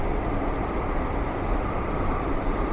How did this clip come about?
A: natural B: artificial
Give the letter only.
B